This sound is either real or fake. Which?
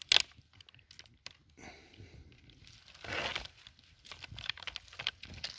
real